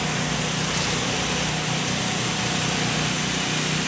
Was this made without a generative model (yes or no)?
yes